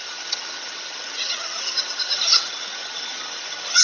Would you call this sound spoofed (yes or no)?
yes